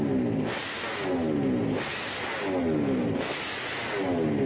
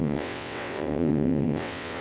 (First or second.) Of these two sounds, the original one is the first